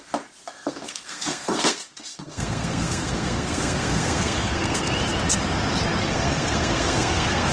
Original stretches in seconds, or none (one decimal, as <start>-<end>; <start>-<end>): 0.0-0.4; 4.9-6.0